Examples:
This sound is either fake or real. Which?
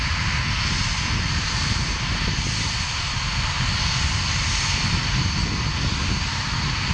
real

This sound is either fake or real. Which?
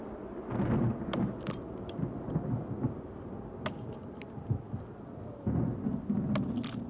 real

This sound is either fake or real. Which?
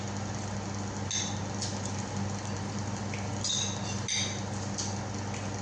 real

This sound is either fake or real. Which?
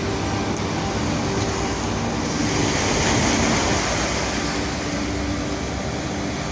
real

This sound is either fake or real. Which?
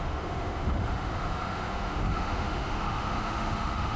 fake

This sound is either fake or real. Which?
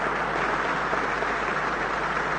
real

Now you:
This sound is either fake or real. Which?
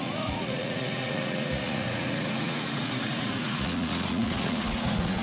fake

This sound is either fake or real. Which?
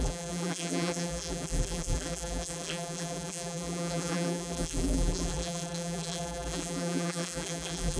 fake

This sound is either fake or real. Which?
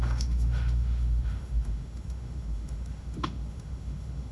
fake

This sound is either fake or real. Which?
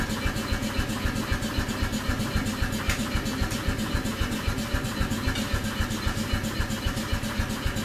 real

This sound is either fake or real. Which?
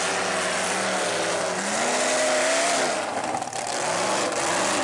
real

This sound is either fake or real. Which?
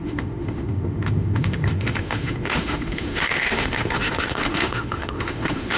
fake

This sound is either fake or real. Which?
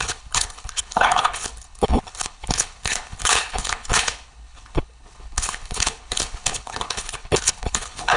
fake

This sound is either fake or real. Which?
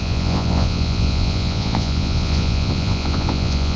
fake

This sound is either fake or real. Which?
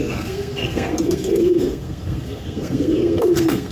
fake